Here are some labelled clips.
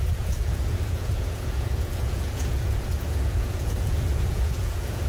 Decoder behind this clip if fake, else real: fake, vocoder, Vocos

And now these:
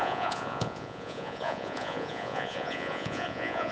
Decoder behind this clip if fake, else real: fake, vocoder, Vocos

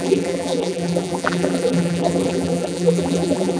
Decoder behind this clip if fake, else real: fake, vocoder, BigVGAN v2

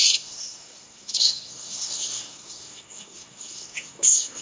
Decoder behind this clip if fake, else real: fake, codec, SNAC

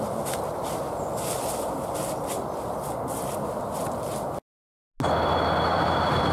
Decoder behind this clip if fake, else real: real